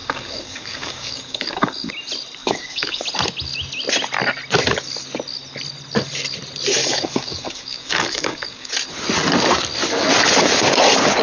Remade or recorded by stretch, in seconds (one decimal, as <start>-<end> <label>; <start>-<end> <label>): 0.0-1.9 remade; 1.9-2.4 recorded; 2.4-3.0 remade; 3.0-6.8 recorded; 6.8-8.7 remade; 8.7-11.2 recorded